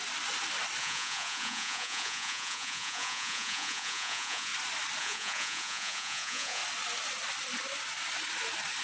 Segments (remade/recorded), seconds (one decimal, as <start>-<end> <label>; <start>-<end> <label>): 0.0-0.8 recorded; 0.8-4.5 remade; 4.5-5.0 recorded; 5.0-6.6 remade; 6.6-8.8 recorded